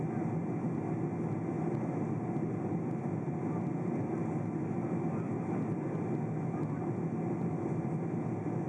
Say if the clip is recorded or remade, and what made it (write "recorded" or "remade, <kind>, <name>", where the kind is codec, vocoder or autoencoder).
recorded